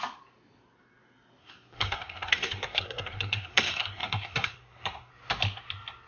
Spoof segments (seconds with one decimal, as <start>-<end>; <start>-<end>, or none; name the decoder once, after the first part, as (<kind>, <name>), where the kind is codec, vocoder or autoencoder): 1.4-5.1 (codec, SNAC)